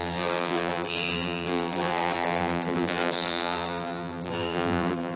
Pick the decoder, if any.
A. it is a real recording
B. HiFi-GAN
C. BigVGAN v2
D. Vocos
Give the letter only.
C